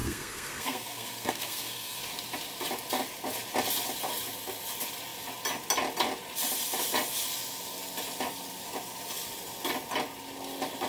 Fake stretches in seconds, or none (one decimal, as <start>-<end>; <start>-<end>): 0.0-2.0